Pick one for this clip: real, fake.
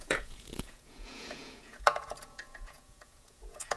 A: fake